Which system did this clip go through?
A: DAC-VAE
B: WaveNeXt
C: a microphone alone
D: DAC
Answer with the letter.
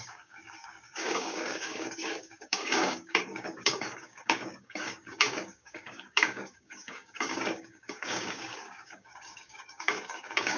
D